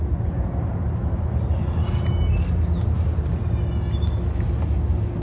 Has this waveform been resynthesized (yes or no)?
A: no